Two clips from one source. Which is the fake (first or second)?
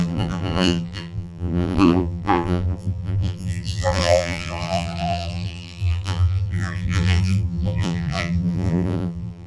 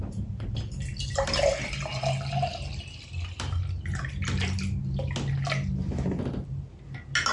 first